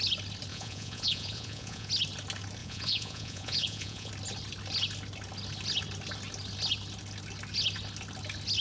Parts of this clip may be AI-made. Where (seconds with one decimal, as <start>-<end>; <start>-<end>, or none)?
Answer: 0.5-1.9; 2.6-4.1